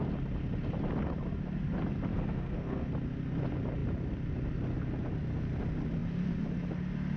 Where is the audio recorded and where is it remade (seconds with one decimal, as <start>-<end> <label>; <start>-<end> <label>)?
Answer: 0.0-2.1 recorded; 2.1-2.9 remade; 2.9-7.2 recorded